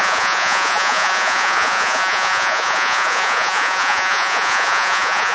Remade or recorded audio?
remade